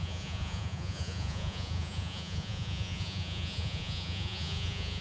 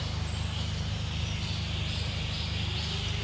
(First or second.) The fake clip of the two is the first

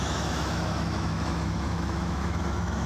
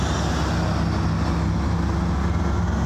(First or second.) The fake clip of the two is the first